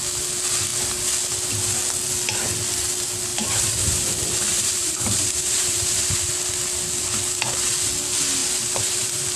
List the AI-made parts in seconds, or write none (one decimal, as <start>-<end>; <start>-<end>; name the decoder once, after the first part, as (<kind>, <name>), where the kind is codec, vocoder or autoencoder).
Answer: 3.3-4.0 (vocoder, BigVGAN v2); 4.5-6.3; 8.4-9.4